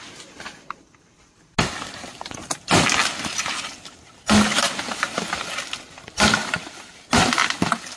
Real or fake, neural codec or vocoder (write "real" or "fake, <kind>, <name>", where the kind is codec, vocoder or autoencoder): real